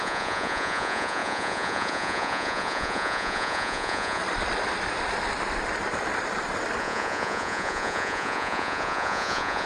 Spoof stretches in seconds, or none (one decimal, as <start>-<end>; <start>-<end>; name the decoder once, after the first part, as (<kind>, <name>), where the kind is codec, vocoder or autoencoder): 0.0-4.2 (vocoder, Vocos); 6.8-9.7